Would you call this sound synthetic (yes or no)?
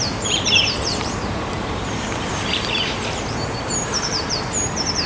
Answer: yes